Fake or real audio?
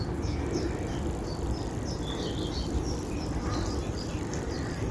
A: real